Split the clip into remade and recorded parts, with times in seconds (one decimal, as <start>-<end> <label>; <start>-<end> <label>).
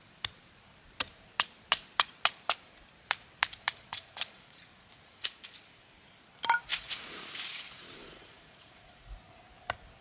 0.0-3.9 recorded; 3.9-5.4 remade; 5.4-6.7 recorded; 6.7-9.4 remade; 9.4-10.0 recorded